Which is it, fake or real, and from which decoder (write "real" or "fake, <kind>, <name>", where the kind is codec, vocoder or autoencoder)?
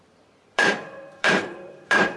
fake, vocoder, BigVGAN v2